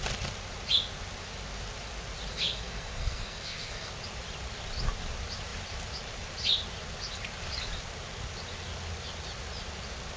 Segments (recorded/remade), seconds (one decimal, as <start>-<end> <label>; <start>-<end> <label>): 0.0-2.3 recorded; 2.3-3.9 remade; 3.9-10.2 recorded